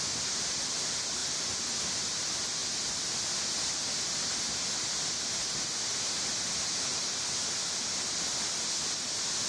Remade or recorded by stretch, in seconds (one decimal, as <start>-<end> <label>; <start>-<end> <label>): 0.0-1.2 recorded; 1.2-1.8 remade; 1.8-6.9 recorded; 6.9-7.7 remade; 7.7-9.5 recorded